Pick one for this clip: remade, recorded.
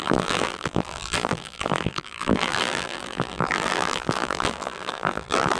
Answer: remade